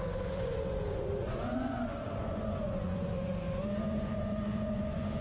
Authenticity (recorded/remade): remade